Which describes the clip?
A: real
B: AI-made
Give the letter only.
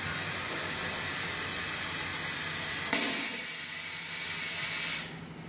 A